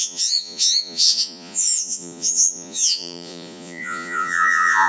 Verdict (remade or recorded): remade